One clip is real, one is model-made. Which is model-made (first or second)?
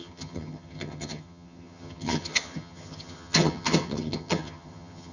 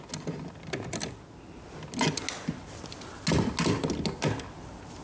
first